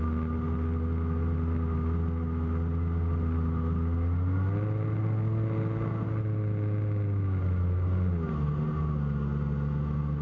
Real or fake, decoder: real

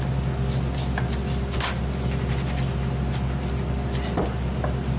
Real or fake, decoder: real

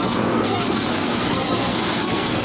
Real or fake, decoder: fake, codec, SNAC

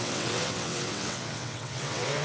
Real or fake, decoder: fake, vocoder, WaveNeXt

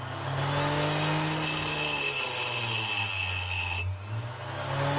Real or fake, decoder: real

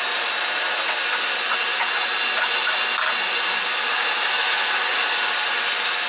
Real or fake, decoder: real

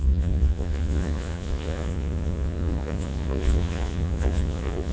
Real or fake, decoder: fake, vocoder, Vocos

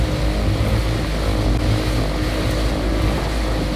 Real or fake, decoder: real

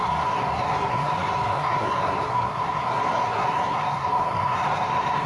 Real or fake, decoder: fake, codec, SNAC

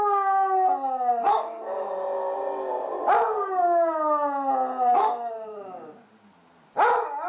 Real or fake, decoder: real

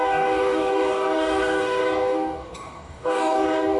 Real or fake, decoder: fake, codec, DAC